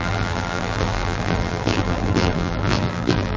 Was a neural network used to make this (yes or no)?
yes